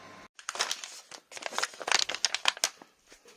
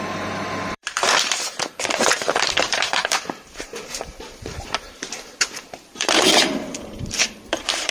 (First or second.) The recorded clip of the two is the first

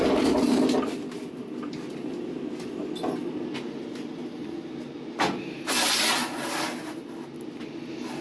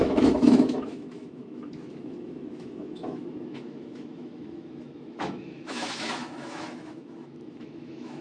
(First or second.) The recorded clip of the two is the first